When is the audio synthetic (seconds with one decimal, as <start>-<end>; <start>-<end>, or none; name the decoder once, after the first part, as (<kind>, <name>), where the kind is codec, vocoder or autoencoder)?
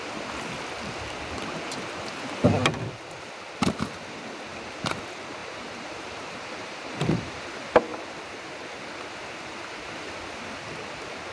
5.4-7.4 (vocoder, BigVGAN v2)